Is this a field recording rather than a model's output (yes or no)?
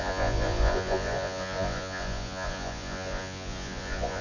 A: no